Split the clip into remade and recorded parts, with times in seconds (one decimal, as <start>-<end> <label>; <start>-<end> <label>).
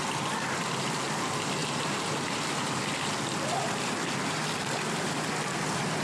0.0-1.6 recorded; 1.6-2.8 remade; 2.8-6.0 recorded